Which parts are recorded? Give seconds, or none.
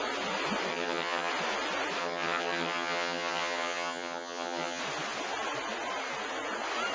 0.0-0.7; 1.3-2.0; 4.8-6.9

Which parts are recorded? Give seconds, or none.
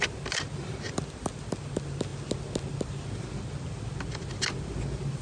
0.0-5.2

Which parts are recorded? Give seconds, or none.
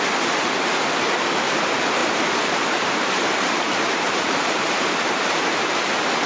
0.0-2.0; 5.8-6.3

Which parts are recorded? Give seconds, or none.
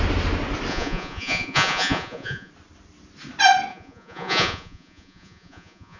0.0-0.7; 2.5-3.7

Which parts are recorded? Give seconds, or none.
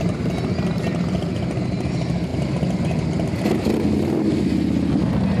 0.0-5.4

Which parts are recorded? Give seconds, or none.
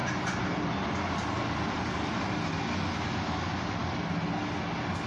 0.0-5.1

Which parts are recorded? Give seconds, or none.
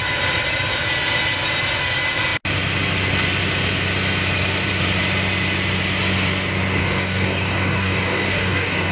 0.0-6.8